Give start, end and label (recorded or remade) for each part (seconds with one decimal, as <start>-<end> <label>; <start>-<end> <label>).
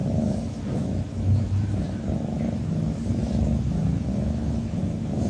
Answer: 0.0-5.3 remade